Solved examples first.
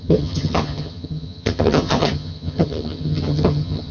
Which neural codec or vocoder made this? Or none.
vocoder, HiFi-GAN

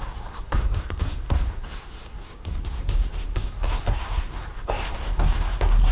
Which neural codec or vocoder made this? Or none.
codec, SNAC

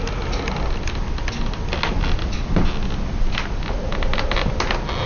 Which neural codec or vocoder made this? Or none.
none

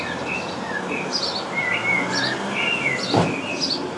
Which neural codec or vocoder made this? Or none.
none